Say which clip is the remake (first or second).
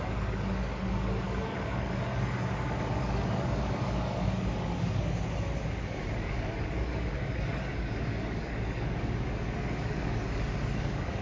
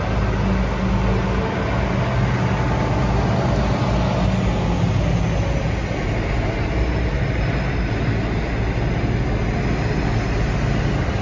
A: first